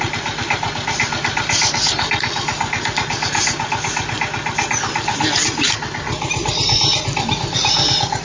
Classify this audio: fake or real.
real